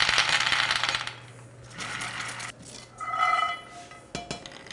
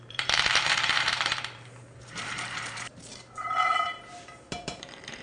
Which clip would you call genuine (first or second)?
first